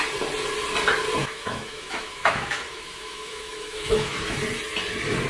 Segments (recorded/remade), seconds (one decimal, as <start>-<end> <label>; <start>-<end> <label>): 0.0-1.2 recorded; 1.2-4.4 remade; 4.4-5.3 recorded